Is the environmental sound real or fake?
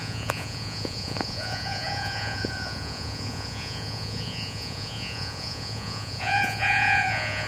fake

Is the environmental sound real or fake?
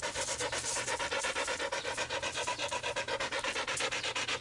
real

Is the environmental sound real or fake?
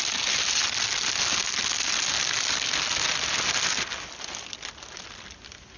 real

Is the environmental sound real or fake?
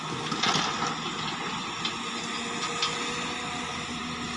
real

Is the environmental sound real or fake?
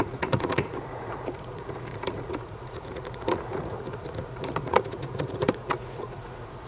fake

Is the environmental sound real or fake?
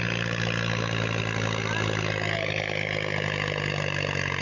real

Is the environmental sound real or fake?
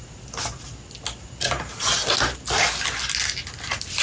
real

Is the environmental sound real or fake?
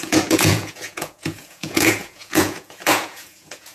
fake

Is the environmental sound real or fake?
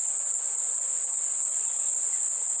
fake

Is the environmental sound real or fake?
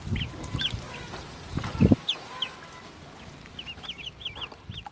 real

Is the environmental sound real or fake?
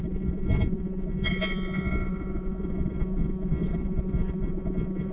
fake